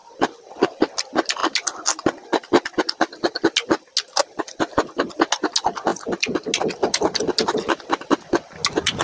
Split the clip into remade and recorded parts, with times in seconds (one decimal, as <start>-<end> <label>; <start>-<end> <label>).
0.0-9.0 recorded